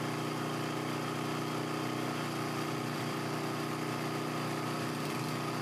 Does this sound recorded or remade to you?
recorded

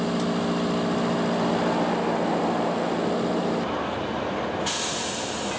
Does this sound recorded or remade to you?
recorded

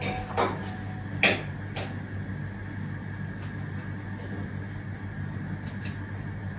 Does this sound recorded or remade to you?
recorded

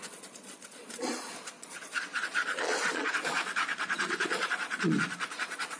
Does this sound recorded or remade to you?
remade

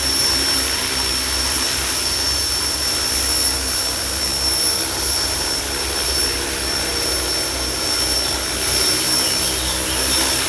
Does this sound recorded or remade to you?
recorded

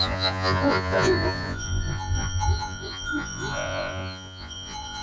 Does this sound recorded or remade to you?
remade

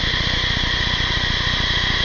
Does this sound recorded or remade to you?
recorded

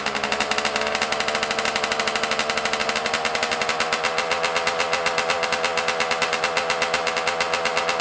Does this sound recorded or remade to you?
recorded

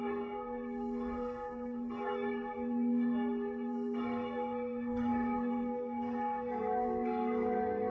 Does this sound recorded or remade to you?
remade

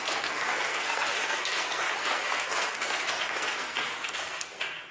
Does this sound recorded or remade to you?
remade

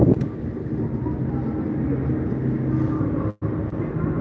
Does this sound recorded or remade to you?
recorded